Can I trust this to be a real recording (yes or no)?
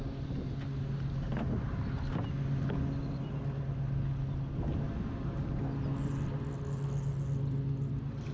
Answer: yes